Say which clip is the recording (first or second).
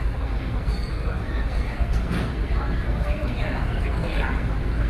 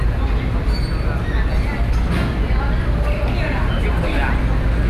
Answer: second